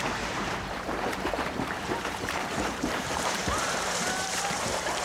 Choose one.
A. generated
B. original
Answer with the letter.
A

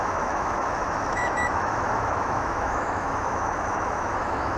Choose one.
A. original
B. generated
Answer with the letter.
B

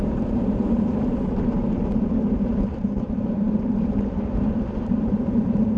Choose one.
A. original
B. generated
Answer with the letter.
B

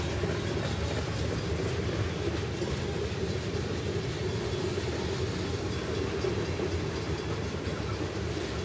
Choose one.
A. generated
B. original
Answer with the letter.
B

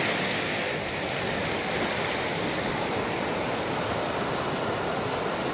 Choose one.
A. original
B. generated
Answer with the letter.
A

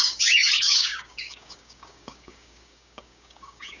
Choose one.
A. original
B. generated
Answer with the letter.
B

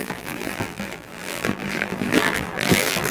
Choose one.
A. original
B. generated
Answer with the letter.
B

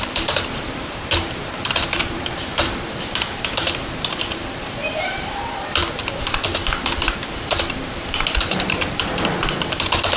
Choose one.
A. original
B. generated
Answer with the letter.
B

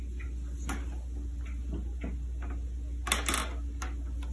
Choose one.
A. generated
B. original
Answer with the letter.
B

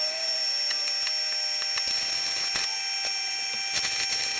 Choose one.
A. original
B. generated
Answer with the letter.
A